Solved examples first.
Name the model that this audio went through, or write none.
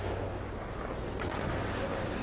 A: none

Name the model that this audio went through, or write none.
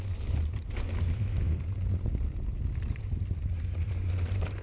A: none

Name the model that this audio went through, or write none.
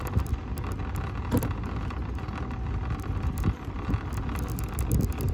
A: none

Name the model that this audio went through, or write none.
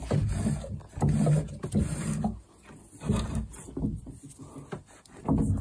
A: none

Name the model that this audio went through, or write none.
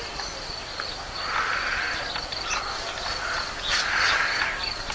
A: none